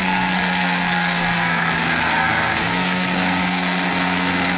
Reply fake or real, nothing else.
fake